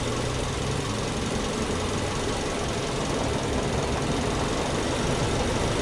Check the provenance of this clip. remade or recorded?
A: recorded